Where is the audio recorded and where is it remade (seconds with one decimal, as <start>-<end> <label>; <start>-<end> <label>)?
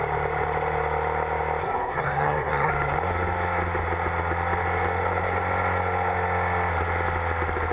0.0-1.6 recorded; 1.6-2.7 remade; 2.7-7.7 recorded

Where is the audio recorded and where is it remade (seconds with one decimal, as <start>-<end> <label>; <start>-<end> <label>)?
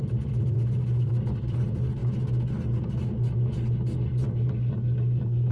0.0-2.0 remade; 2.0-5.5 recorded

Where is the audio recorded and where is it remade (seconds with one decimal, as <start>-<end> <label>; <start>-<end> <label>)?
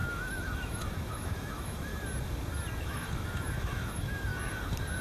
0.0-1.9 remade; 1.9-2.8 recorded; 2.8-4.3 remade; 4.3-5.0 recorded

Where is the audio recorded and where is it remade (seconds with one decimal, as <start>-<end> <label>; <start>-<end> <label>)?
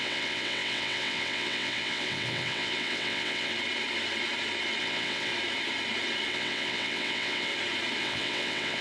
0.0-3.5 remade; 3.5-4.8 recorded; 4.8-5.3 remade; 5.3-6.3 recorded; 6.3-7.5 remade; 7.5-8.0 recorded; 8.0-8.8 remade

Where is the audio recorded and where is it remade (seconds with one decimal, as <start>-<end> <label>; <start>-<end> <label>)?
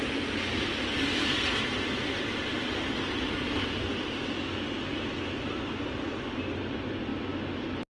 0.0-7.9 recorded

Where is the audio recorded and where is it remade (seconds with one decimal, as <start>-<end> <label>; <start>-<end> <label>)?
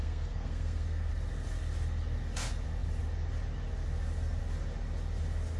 0.0-1.1 remade; 1.1-5.6 recorded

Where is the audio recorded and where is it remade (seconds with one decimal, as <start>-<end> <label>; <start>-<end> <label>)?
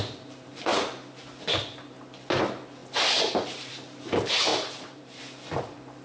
0.0-4.5 recorded; 4.5-5.2 remade; 5.2-6.0 recorded